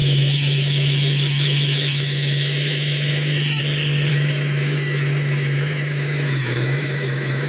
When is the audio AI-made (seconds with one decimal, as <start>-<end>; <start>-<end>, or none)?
0.0-3.6; 4.1-7.5